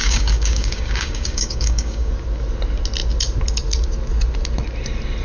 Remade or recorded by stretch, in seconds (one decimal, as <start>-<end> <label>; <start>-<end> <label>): 0.0-2.1 remade; 2.1-5.2 recorded